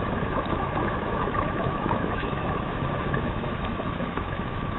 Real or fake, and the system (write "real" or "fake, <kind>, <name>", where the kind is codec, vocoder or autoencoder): fake, autoencoder, DAC-VAE